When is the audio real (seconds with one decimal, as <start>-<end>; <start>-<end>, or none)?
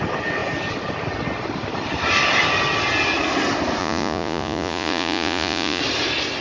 0.0-3.8; 5.8-6.4